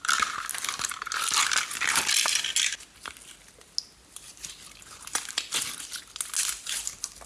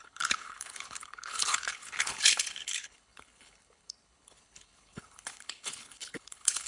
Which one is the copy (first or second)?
second